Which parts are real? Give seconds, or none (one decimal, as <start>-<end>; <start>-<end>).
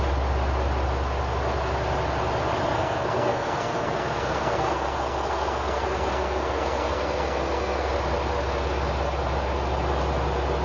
0.0-2.7; 7.9-10.6